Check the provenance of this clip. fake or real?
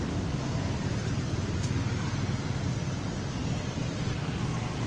real